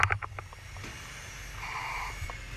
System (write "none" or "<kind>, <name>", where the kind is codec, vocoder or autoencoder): none